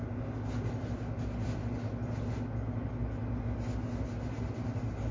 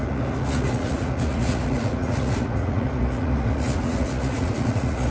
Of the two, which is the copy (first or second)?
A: second